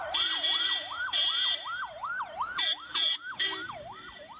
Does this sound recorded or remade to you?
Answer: remade